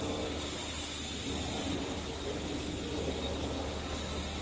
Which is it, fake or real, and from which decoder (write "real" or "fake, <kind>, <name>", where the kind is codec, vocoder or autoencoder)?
real